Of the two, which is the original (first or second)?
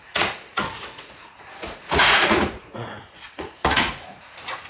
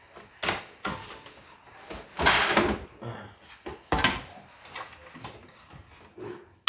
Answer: second